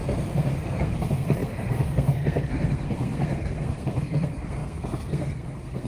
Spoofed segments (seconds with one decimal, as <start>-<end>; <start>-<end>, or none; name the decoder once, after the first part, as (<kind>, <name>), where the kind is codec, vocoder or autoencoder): 0.0-5.9 (codec, SNAC)